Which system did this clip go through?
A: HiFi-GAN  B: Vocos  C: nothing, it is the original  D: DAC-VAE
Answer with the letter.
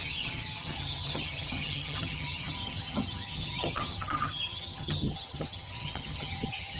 A